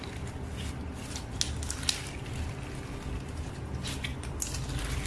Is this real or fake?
real